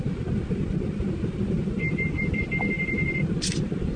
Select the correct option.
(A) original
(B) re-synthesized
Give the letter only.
A